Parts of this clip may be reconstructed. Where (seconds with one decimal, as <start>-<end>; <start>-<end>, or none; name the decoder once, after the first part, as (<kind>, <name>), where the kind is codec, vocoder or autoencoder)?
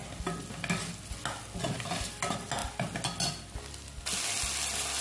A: none